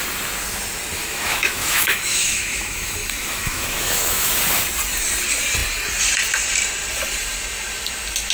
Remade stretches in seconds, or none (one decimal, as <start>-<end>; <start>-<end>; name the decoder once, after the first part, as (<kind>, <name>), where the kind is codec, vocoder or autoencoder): 1.0-4.3 (autoencoder, DAC-VAE)